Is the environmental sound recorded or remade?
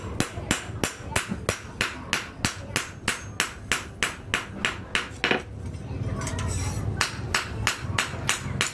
recorded